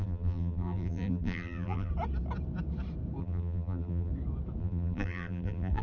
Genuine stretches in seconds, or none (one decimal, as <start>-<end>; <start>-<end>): 1.9-3.2; 4.1-4.6